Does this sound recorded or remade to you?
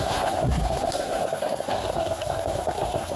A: remade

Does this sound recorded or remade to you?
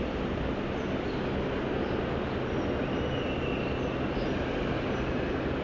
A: recorded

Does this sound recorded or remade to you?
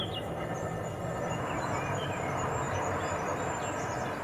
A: recorded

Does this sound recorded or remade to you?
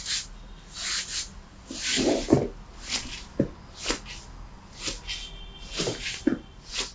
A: recorded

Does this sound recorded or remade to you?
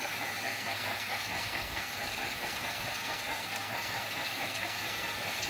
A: remade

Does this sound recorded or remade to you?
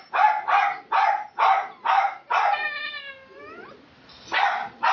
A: recorded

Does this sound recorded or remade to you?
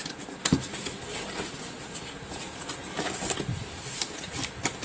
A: recorded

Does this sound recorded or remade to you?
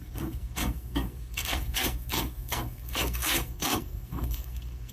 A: remade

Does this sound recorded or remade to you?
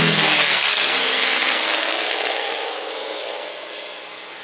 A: remade